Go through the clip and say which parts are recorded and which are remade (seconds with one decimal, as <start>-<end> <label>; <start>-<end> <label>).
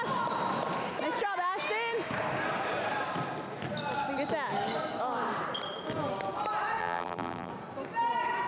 0.0-6.8 recorded; 6.8-7.5 remade; 7.5-8.5 recorded